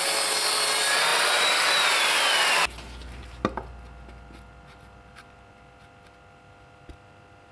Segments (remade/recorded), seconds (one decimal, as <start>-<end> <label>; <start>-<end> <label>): 0.0-7.5 recorded